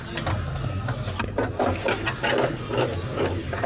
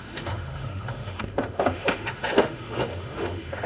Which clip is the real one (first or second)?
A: first